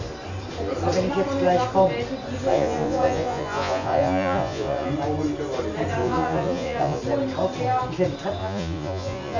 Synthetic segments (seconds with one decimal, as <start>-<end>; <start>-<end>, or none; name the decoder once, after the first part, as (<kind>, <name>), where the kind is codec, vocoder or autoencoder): 2.5-4.9 (vocoder, Vocos); 6.0-7.0; 8.4-9.4